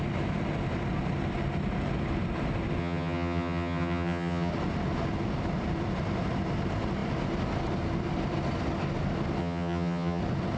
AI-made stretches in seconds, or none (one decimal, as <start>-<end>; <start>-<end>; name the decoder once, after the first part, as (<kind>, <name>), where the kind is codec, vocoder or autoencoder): 2.8-4.5 (vocoder, HiFi-GAN); 9.4-10.2